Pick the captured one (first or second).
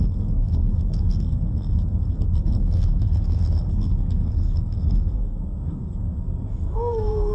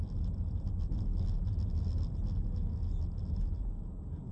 second